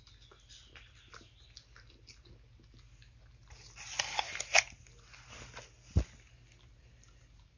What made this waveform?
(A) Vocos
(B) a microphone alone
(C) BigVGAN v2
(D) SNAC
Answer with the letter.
B